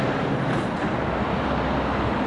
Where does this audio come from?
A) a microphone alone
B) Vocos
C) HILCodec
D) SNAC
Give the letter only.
A